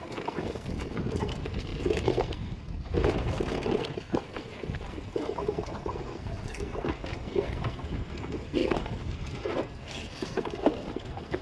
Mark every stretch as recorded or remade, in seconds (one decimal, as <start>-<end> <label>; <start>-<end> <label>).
0.0-11.4 remade